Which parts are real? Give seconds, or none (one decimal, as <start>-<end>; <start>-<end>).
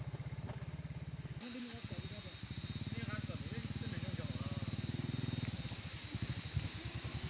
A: 0.0-7.3